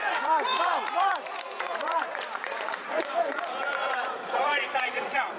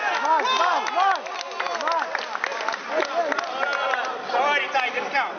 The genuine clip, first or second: second